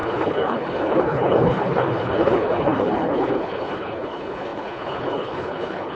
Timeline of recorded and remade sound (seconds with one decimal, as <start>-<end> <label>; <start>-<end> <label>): 0.0-5.9 remade